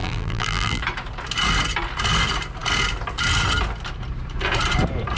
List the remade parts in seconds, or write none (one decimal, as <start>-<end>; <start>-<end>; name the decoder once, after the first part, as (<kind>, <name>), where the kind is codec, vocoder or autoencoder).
0.0-0.8 (vocoder, BigVGAN v2)